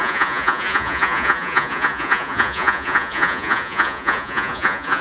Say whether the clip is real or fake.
fake